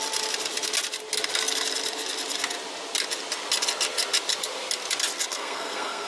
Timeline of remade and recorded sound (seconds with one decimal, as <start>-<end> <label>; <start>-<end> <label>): 0.0-5.3 recorded; 5.3-6.1 remade